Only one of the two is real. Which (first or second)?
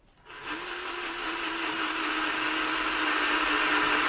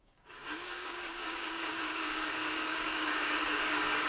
first